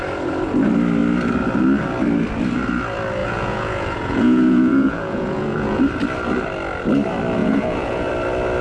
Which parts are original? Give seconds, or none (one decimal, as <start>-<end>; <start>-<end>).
0.0-3.2; 5.8-7.4; 8.1-8.6